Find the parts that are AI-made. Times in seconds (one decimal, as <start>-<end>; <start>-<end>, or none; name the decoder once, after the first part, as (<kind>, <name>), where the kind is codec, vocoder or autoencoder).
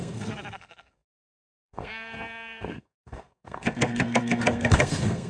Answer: 0.0-5.3 (codec, SNAC)